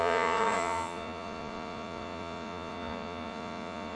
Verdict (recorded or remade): remade